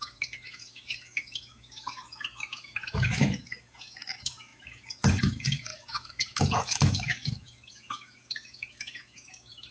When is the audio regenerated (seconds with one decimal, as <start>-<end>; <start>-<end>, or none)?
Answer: 0.0-9.7